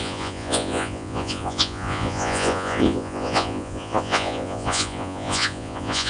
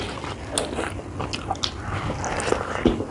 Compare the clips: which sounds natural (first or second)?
second